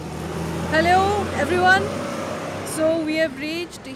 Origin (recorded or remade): recorded